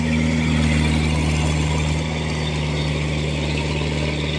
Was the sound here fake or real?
real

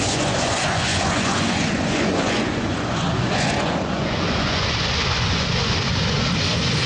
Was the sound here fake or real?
fake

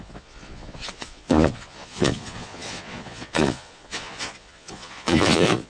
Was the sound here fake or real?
fake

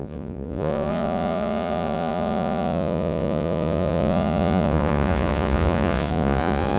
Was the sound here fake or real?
fake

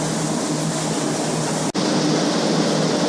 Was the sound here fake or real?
real